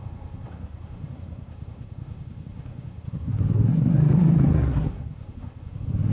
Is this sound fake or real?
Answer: fake